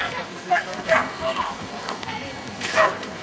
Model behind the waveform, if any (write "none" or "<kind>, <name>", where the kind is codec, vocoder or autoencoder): codec, SNAC